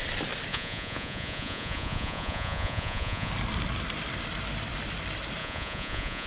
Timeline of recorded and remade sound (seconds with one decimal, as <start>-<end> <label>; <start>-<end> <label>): 0.0-0.5 recorded; 0.5-3.3 remade; 3.3-5.4 recorded; 5.4-6.3 remade

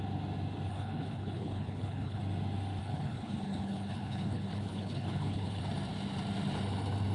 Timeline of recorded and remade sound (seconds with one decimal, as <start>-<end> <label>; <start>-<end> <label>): 0.0-0.7 recorded; 0.7-2.2 remade; 2.2-2.8 recorded; 2.8-5.6 remade; 5.6-7.1 recorded

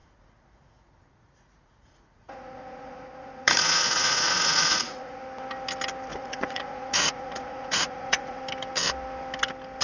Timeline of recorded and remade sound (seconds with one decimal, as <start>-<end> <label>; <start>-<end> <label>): 0.0-5.2 remade; 5.2-6.1 recorded; 6.1-8.4 remade; 8.4-9.8 recorded